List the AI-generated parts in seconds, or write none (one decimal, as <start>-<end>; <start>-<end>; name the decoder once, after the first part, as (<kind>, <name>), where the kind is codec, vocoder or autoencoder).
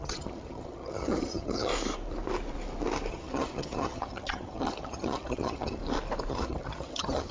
0.0-1.7 (vocoder, HiFi-GAN); 3.1-5.8; 6.3-7.3